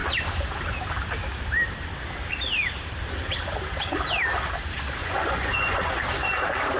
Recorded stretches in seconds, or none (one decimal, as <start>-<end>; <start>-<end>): 0.0-5.0; 6.0-6.8